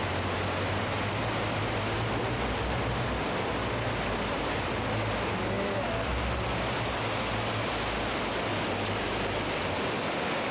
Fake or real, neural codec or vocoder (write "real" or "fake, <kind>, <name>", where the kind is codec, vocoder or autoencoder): real